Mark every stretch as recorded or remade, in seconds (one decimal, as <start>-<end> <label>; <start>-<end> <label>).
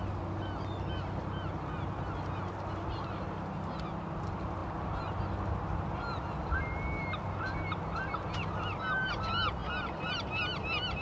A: 0.0-11.0 recorded